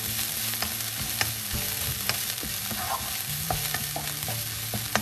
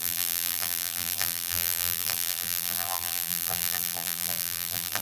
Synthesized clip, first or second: second